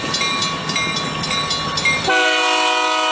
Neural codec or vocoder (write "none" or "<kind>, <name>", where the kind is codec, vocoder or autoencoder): none